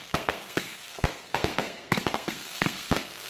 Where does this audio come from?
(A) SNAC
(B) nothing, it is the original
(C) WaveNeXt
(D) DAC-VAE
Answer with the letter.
A